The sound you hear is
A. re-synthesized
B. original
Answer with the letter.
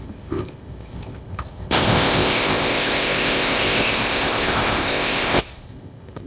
A